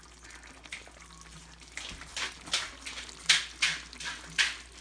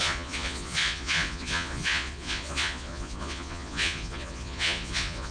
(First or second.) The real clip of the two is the first